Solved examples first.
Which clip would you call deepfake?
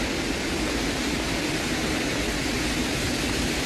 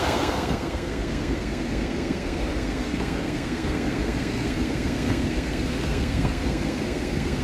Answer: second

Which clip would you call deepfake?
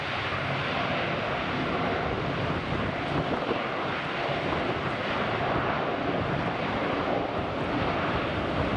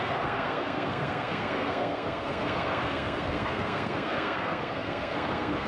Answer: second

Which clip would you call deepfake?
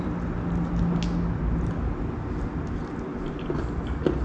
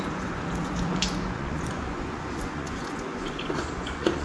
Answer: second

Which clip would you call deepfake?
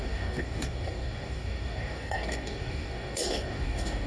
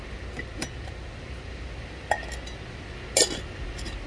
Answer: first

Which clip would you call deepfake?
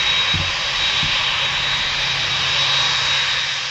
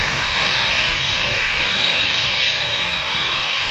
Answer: second